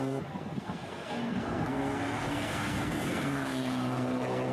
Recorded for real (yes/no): no